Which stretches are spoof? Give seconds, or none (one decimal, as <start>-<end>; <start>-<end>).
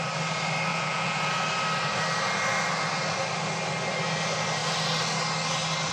0.7-1.4